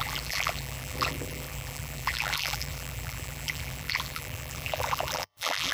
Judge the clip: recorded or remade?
remade